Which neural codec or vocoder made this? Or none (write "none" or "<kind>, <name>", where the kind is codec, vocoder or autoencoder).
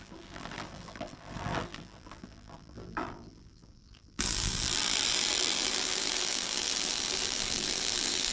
vocoder, BigVGAN v2